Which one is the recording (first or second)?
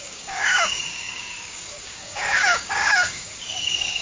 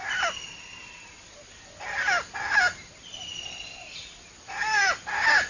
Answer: second